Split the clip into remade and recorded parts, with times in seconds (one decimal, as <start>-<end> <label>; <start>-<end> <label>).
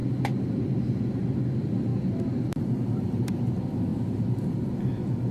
0.0-1.9 recorded; 1.9-3.3 remade; 3.3-3.9 recorded; 3.9-4.6 remade; 4.6-5.3 recorded